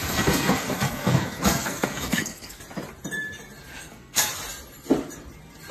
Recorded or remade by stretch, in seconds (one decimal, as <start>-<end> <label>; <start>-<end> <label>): 0.0-2.6 remade; 2.6-3.7 recorded; 3.7-4.3 remade; 4.3-5.7 recorded